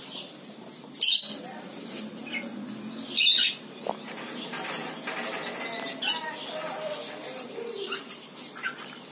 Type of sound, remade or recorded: recorded